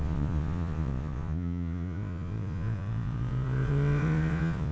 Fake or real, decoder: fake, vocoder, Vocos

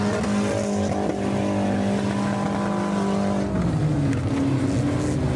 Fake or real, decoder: real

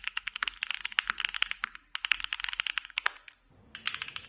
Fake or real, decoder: real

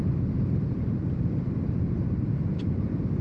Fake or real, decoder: real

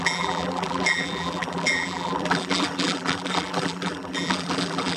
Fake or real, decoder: fake, vocoder, BigVGAN v2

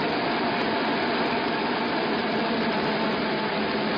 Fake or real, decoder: fake, vocoder, BigVGAN v2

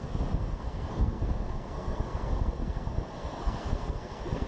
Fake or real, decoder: fake, codec, SNAC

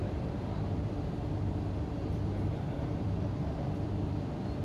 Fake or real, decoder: fake, vocoder, BigVGAN v2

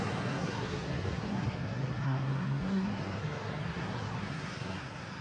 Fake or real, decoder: fake, codec, SNAC